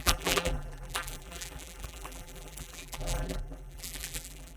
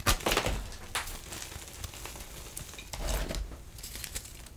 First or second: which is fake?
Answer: first